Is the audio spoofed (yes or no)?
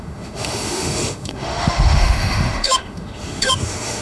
yes